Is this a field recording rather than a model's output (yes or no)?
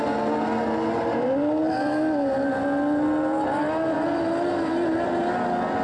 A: yes